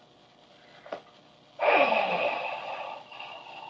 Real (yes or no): yes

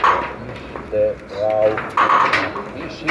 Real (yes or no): yes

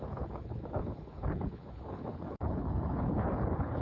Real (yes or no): no